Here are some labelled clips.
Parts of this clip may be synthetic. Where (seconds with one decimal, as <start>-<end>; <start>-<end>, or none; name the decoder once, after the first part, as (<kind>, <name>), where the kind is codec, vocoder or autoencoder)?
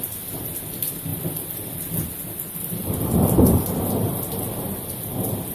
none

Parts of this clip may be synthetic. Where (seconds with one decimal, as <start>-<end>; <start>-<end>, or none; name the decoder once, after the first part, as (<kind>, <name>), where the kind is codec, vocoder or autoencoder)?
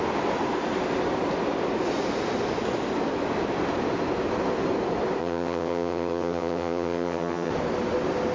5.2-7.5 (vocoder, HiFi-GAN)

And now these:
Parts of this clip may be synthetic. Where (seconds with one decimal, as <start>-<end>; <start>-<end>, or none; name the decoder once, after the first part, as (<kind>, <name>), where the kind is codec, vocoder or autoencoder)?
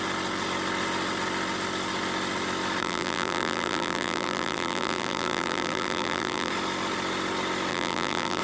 2.8-6.5 (vocoder, BigVGAN v2); 7.7-8.4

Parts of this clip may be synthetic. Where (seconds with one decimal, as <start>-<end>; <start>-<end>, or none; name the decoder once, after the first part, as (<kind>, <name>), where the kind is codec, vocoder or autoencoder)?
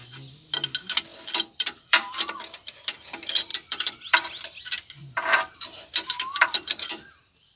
1.1-2.1 (vocoder, BigVGAN v2); 3.5-4.6; 5.0-7.1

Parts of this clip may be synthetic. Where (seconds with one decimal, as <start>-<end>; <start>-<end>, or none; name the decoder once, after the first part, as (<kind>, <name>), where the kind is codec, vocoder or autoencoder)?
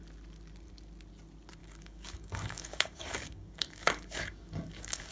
1.6-5.1 (codec, DAC)